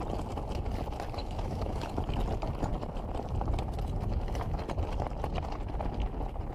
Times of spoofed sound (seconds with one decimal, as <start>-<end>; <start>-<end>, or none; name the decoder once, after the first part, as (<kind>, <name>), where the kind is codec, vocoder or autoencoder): 1.2-2.0 (autoencoder, DAC-VAE)